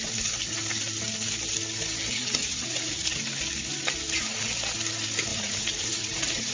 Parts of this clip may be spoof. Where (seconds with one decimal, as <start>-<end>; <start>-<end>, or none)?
2.4-3.2; 5.3-6.5